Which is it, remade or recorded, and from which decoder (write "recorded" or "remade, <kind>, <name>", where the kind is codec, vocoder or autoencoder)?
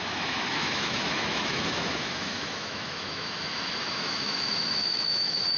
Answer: remade, autoencoder, DAC-VAE